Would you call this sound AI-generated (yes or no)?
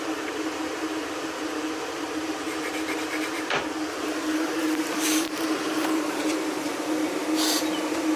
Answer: yes